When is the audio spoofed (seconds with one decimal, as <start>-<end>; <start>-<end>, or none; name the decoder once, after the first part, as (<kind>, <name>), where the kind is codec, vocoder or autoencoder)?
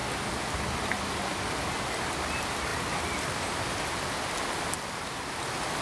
none